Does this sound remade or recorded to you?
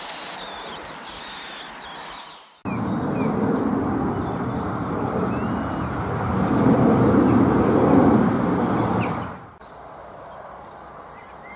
recorded